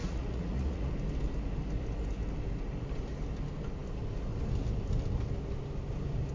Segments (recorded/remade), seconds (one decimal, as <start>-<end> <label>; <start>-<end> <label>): 0.0-0.9 remade; 0.9-6.3 recorded